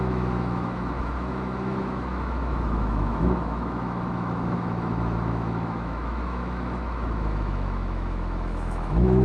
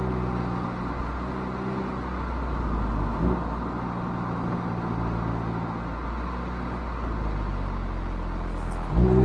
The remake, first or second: first